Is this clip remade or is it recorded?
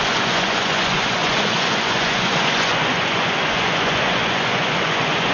remade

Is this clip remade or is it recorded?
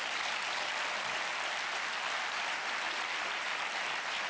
recorded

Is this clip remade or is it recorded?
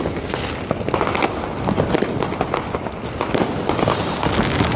recorded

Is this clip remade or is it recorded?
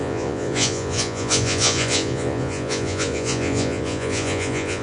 remade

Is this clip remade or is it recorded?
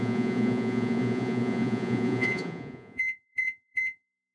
remade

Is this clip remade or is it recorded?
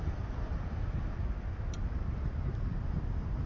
recorded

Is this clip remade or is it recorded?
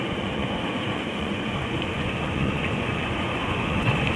remade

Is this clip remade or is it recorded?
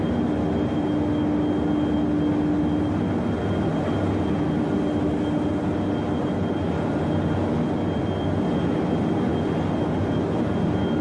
recorded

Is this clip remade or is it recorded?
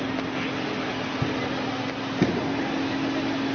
recorded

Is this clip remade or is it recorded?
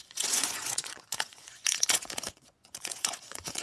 remade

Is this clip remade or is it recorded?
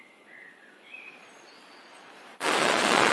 remade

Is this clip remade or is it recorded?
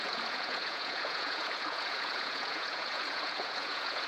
remade